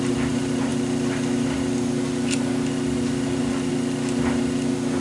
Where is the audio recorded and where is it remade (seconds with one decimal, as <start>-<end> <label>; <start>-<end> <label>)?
0.0-5.0 recorded